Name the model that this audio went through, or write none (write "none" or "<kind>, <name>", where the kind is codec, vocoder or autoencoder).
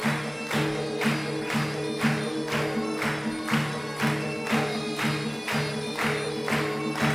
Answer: none